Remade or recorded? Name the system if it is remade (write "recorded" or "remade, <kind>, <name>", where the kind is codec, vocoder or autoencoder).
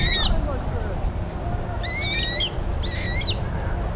recorded